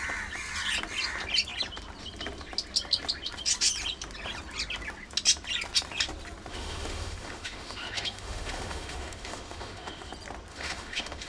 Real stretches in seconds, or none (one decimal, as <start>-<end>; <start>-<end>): 0.0-6.5; 10.1-10.5